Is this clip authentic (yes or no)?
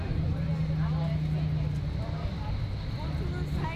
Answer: yes